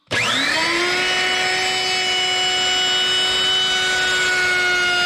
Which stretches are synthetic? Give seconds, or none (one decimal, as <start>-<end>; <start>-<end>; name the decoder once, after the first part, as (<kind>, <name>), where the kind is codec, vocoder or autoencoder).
0.0-0.8 (vocoder, BigVGAN v2)